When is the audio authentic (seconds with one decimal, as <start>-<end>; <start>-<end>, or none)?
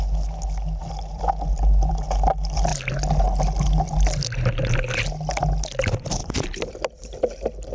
0.0-7.7